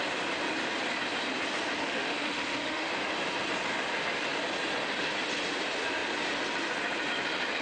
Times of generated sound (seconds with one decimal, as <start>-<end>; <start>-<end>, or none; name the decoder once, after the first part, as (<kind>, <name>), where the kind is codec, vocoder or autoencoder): 1.8-2.9 (autoencoder, DAC-VAE)